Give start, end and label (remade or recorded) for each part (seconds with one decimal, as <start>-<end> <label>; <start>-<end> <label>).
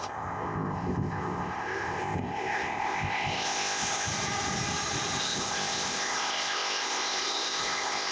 0.0-4.1 remade; 4.1-5.2 recorded; 5.2-8.1 remade